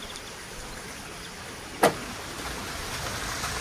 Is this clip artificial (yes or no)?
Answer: no